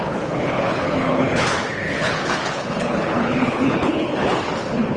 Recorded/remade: remade